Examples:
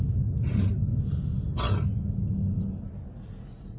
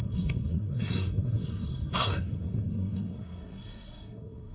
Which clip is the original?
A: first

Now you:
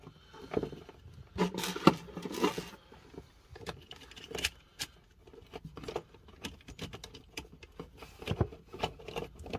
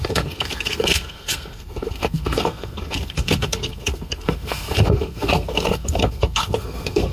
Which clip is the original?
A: first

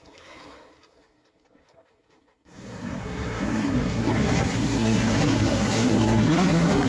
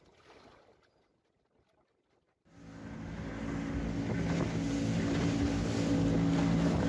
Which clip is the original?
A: second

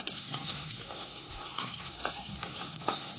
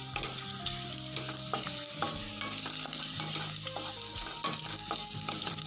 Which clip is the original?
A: second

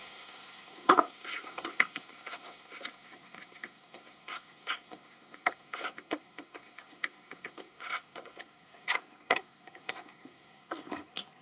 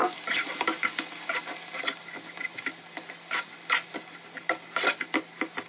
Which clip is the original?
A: second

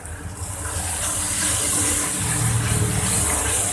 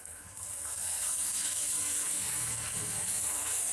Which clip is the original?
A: first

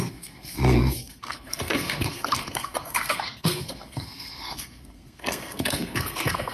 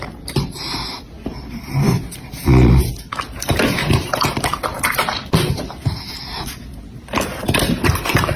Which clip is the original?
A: second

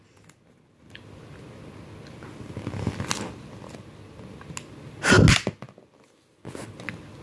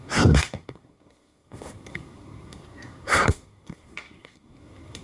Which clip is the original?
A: first